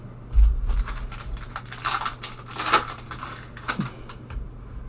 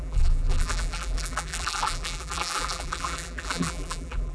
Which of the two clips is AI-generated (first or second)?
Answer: second